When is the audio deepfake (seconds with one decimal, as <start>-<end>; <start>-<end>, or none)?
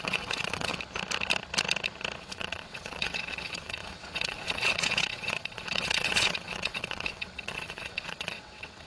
0.0-0.7; 2.2-8.9